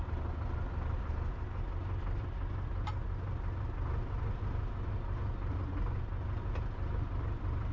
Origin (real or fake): real